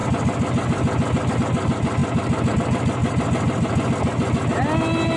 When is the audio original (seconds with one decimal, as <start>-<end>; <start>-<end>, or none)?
0.0-5.2